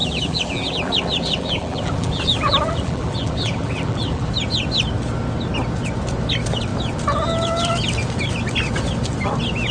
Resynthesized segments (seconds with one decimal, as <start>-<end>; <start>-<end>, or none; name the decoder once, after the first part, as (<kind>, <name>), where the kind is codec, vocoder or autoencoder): 0.0-4.3 (vocoder, BigVGAN v2)